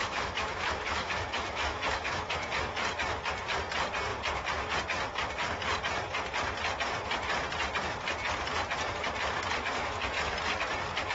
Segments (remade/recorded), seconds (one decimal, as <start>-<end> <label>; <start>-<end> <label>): 0.0-2.5 remade; 2.5-9.8 recorded; 9.8-10.3 remade; 10.3-11.1 recorded